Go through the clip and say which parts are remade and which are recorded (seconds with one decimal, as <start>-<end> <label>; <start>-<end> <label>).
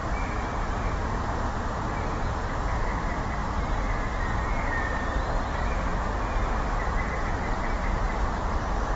0.0-2.8 recorded; 2.8-3.4 remade; 3.4-4.5 recorded; 4.5-9.0 remade